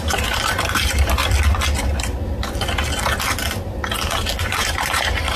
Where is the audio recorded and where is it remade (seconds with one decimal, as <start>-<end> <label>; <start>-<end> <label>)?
0.0-1.2 remade; 1.2-4.4 recorded; 4.4-5.4 remade